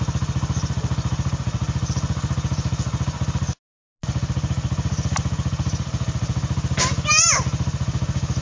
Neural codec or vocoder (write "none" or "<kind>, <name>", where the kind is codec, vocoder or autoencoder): none